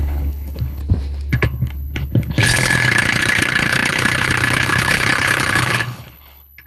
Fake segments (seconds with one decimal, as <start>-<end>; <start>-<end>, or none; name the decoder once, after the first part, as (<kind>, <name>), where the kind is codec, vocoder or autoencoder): 0.0-0.8 (codec, HILCodec); 1.3-6.7